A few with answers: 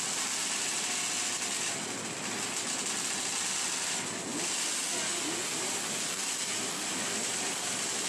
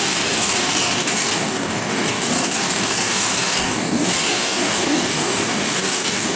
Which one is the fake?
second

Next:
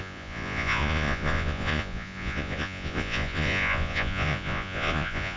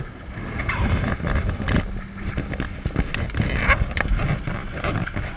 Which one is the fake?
first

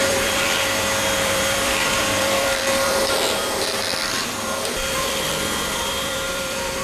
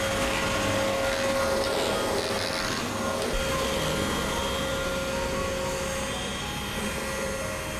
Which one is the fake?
first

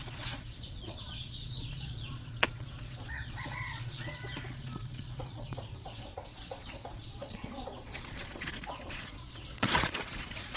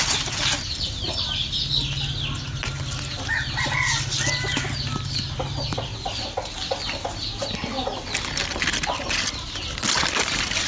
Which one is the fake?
first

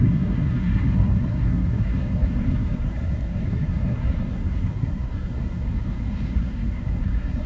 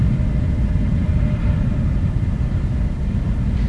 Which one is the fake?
first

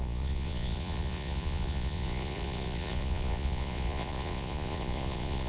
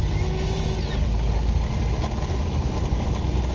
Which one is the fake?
first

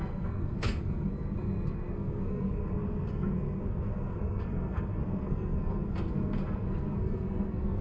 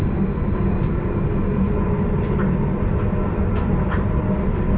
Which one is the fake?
first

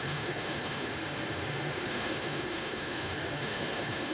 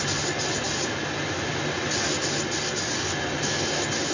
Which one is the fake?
first